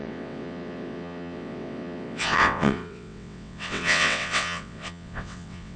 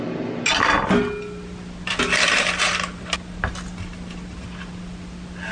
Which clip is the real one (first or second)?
second